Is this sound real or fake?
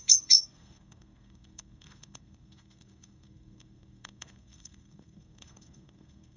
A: fake